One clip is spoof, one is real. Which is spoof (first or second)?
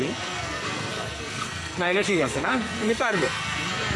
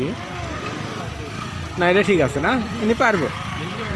first